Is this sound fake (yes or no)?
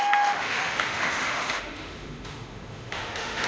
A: yes